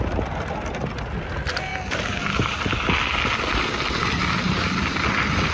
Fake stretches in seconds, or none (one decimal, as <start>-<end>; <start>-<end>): none